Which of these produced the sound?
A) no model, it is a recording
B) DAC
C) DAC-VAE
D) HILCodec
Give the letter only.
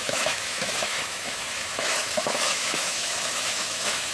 C